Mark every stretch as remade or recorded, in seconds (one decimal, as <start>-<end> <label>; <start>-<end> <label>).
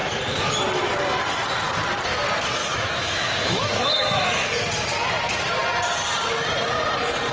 0.0-2.6 recorded; 2.6-4.5 remade; 4.5-7.3 recorded